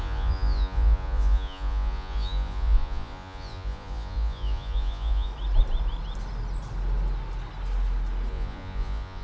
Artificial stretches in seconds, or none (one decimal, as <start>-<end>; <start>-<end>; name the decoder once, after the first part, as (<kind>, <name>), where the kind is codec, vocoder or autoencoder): 0.0-5.3 (vocoder, Vocos); 8.3-9.2